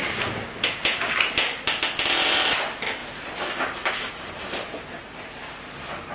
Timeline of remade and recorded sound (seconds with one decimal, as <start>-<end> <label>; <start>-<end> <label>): 0.0-6.1 recorded